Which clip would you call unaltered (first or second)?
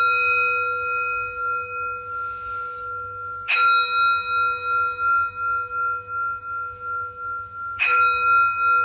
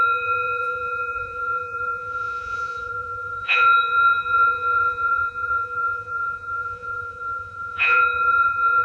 first